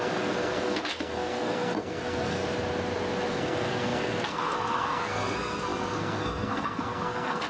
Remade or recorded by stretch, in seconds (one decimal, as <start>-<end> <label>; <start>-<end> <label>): 0.0-2.4 remade; 2.4-3.3 recorded; 3.3-7.5 remade

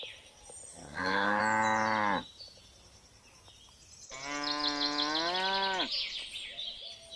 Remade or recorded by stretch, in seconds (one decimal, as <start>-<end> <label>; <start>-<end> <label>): 0.0-0.7 recorded; 0.7-1.4 remade; 1.4-7.2 recorded

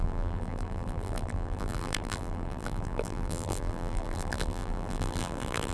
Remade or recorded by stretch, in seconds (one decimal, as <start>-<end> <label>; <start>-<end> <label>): 0.0-5.7 remade

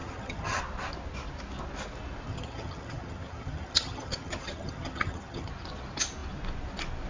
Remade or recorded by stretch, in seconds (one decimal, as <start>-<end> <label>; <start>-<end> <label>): 0.0-0.6 remade; 0.6-2.3 recorded; 2.3-5.5 remade; 5.5-7.1 recorded

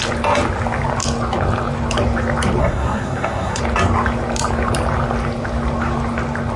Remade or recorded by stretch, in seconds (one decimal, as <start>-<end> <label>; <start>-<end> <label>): 0.0-2.6 recorded; 2.6-3.6 remade; 3.6-6.6 recorded

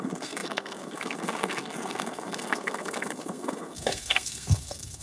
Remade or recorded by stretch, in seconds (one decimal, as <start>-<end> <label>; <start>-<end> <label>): 0.0-5.0 remade

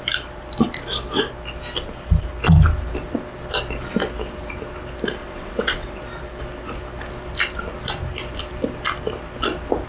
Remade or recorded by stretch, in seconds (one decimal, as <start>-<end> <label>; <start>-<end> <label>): 0.0-5.2 recorded; 5.2-6.0 remade; 6.0-9.9 recorded